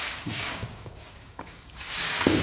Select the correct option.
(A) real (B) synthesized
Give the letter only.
B